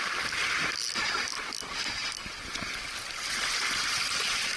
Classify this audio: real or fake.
real